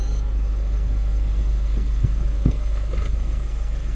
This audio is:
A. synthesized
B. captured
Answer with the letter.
A